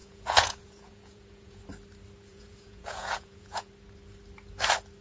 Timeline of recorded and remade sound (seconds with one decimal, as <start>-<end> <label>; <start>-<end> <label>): 0.0-1.6 remade; 1.6-2.3 recorded; 2.3-3.7 remade; 3.7-5.0 recorded